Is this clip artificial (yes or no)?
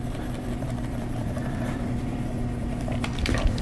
yes